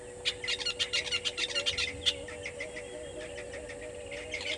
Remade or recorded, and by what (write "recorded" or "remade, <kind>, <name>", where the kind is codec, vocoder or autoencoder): recorded